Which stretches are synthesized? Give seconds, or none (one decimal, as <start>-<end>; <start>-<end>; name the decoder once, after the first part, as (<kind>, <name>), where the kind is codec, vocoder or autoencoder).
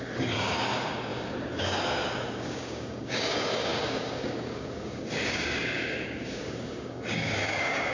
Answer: 0.0-7.9 (codec, DAC)